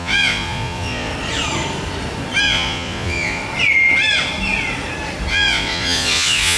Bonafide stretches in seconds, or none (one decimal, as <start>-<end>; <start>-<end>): 1.1-2.4; 3.4-5.3